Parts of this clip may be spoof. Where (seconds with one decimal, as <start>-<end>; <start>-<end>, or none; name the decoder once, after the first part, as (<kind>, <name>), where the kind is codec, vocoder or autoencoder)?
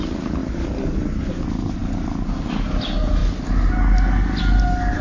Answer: none